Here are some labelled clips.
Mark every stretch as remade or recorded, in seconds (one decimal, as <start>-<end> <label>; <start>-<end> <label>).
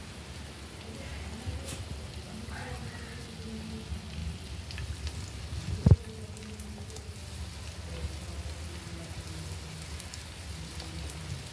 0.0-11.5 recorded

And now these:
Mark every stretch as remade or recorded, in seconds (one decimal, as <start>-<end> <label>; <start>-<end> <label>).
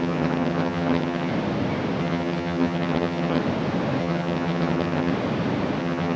0.0-1.3 remade; 1.3-2.0 recorded; 2.0-3.4 remade; 3.4-4.0 recorded; 4.0-5.1 remade; 5.1-5.8 recorded; 5.8-6.2 remade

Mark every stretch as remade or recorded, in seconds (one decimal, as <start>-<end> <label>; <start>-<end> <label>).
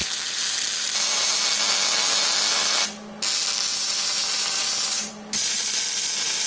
0.0-1.4 remade; 1.4-3.7 recorded; 3.7-5.1 remade; 5.1-6.5 recorded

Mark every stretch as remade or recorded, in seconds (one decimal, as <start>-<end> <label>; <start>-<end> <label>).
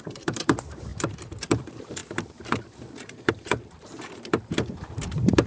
0.0-5.5 remade